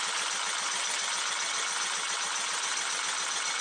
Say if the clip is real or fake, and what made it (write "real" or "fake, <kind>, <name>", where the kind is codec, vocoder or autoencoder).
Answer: real